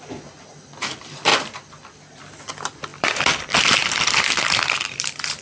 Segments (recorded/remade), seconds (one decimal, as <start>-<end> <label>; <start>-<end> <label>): 0.0-1.3 recorded; 1.3-2.4 remade; 2.4-2.9 recorded; 2.9-5.4 remade